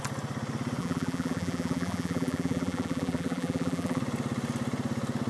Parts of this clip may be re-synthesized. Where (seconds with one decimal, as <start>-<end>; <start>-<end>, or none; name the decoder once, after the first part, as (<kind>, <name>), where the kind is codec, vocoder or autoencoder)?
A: 0.8-4.0 (vocoder, BigVGAN v2)